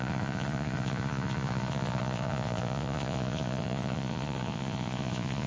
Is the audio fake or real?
fake